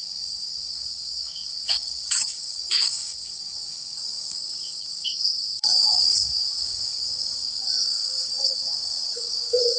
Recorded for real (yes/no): no